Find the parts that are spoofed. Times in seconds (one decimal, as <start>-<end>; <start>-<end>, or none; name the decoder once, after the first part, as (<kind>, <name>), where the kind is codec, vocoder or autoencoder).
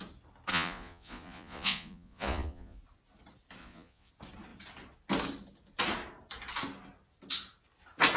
0.5-2.8 (vocoder, Vocos); 3.6-4.1